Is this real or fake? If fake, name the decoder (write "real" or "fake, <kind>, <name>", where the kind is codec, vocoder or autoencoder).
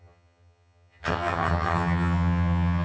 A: fake, vocoder, HiFi-GAN